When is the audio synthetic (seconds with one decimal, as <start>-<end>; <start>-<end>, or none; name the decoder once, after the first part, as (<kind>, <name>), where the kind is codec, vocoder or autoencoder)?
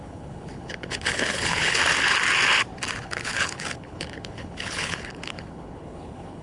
0.0-1.8 (codec, HILCodec); 3.0-6.4